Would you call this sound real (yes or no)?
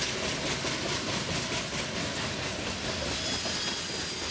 yes